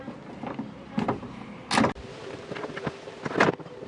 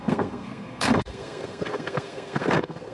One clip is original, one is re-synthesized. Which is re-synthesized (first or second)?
second